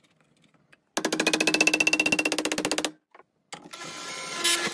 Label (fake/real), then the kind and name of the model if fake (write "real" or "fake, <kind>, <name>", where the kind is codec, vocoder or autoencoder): real